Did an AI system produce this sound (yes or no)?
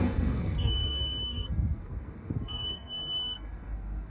yes